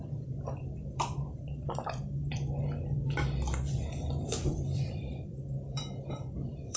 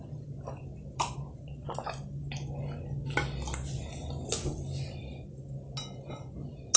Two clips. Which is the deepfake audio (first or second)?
first